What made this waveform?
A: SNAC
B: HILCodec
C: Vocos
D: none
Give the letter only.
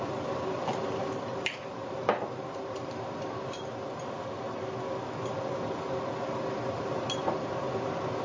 D